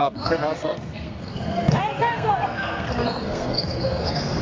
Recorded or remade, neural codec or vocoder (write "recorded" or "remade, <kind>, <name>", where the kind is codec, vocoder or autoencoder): remade, codec, SNAC